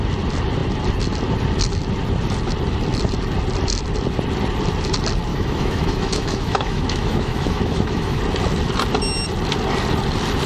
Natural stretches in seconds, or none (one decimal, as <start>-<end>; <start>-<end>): 0.0-5.3; 8.2-10.5